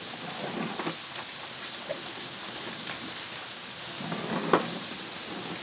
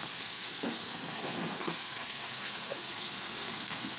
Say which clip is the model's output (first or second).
second